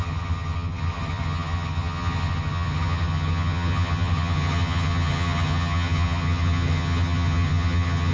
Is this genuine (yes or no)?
no